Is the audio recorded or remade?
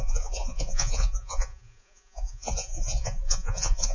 remade